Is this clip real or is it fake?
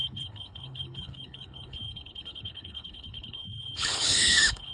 fake